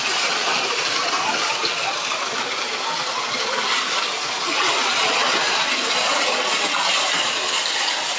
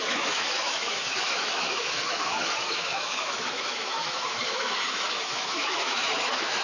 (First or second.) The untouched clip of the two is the first